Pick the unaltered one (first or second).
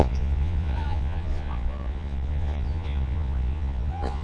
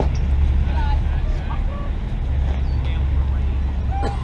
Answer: second